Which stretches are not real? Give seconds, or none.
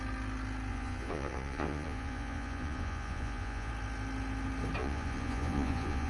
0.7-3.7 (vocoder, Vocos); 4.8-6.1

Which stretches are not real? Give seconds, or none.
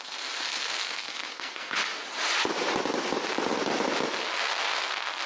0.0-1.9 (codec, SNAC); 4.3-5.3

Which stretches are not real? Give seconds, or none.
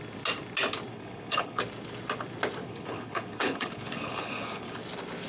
0.9-1.6 (codec, HILCodec); 2.6-4.8